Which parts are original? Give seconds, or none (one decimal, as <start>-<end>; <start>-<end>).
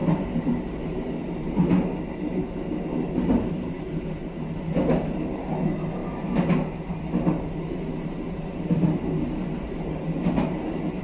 0.0-11.0